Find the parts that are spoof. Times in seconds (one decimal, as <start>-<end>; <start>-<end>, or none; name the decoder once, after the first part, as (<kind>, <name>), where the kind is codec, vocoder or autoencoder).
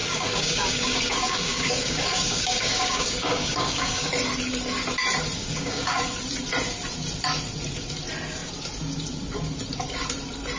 0.0-4.1 (codec, DAC); 5.4-6.0